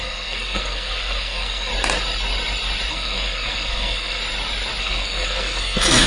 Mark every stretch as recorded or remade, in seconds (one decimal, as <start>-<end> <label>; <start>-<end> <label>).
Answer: 0.0-1.7 remade; 1.7-2.9 recorded; 2.9-4.2 remade; 4.2-4.8 recorded; 4.8-6.1 remade